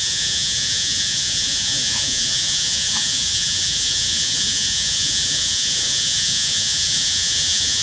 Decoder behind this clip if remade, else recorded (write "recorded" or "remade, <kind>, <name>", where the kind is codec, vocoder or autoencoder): remade, vocoder, Vocos